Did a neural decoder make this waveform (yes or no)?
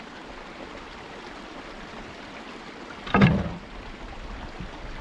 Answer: no